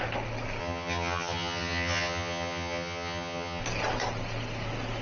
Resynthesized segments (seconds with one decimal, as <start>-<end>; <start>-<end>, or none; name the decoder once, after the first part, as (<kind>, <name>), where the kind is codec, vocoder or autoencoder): 0.6-3.6 (vocoder, HiFi-GAN)